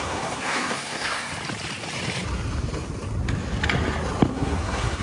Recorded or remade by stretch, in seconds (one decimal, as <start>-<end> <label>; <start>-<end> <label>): 0.0-1.3 remade; 1.3-4.3 recorded; 4.3-5.0 remade

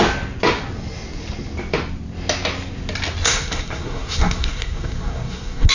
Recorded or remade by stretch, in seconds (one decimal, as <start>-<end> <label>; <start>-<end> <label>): 0.0-3.2 recorded; 3.2-5.7 remade